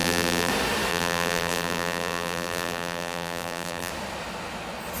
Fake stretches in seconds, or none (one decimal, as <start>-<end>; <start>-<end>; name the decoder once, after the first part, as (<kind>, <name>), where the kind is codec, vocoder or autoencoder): 0.0-0.5 (vocoder, BigVGAN v2); 0.9-3.9